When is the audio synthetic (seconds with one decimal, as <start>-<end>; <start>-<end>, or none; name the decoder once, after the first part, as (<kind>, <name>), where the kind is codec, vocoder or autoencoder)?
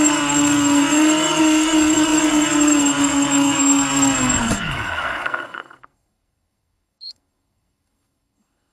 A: 0.0-8.7 (codec, SNAC)